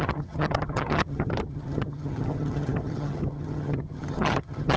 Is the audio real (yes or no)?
no